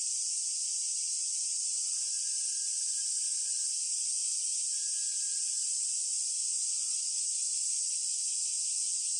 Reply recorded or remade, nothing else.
recorded